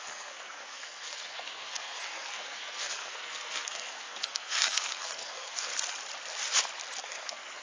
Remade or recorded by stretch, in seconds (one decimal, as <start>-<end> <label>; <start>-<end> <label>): 0.0-5.7 remade; 5.7-7.0 recorded; 7.0-7.6 remade